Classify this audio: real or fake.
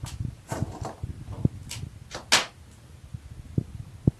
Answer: real